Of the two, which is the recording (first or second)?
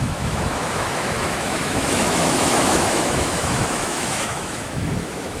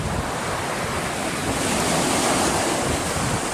second